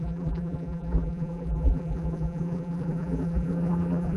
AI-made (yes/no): yes